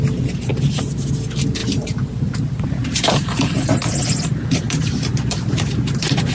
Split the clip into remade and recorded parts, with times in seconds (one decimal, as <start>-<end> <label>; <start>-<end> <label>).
0.0-0.5 recorded; 0.5-1.1 remade; 1.1-1.6 recorded; 1.6-3.7 remade; 3.7-6.3 recorded